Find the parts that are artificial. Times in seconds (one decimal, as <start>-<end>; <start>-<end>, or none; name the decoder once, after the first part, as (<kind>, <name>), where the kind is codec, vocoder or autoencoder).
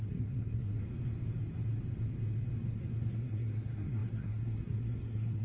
0.0-0.8 (codec, SNAC); 3.0-5.4